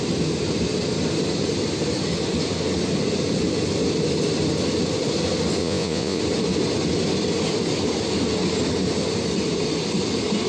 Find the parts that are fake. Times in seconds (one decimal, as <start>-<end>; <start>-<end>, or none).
5.6-6.2

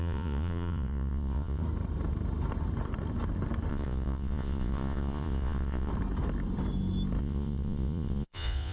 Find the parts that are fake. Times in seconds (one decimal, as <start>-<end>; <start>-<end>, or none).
0.0-1.6; 3.7-5.9; 7.2-8.7

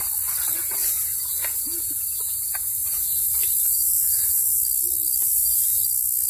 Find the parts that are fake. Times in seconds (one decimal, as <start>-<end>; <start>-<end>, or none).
0.8-4.6; 5.2-5.8

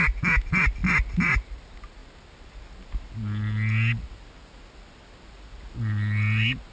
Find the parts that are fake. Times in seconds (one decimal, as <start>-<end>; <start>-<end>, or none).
none

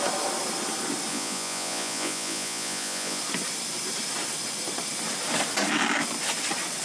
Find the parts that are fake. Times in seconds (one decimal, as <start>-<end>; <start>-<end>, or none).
1.1-3.2

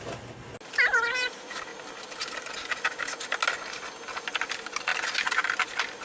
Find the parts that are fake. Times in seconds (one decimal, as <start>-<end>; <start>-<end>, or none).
none

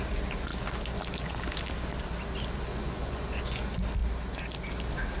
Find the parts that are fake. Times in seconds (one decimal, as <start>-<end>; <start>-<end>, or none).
2.7-3.6